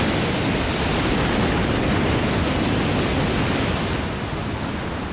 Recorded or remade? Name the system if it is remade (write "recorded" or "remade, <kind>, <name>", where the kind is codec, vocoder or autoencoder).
recorded